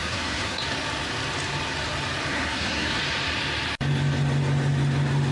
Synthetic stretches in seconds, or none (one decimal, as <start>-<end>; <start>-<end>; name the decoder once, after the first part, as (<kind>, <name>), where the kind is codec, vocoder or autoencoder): 0.0-0.6 (codec, SNAC); 2.3-3.0